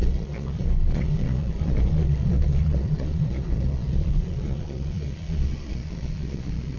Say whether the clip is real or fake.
fake